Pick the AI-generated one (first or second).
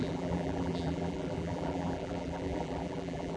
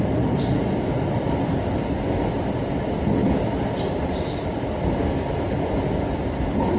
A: first